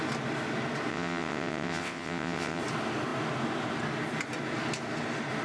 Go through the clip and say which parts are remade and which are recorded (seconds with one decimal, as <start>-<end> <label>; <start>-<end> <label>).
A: 0.0-0.9 recorded; 0.9-2.6 remade; 2.6-5.4 recorded